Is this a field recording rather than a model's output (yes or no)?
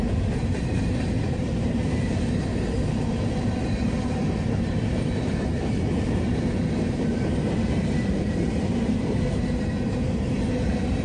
no